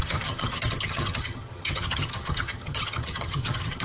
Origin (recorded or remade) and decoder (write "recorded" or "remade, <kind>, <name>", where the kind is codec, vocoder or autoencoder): remade, vocoder, HiFi-GAN